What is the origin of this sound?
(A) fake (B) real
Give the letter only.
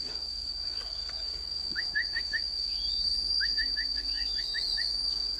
A